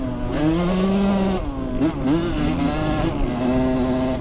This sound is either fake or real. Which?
real